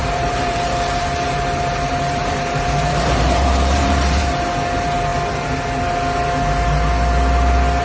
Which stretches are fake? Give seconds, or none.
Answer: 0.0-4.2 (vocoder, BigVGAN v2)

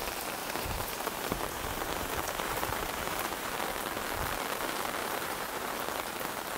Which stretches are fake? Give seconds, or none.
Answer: 0.4-3.5 (vocoder, BigVGAN v2); 5.0-5.7

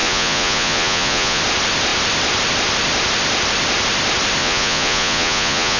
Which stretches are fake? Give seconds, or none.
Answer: 0.0-1.4 (vocoder, Vocos); 4.4-5.8

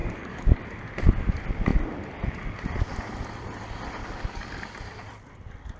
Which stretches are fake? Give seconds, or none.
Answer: 0.0-0.6 (codec, DAC); 4.0-4.5

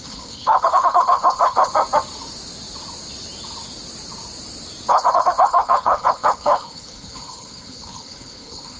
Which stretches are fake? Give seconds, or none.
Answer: 0.0-1.7 (codec, HILCodec); 4.9-8.8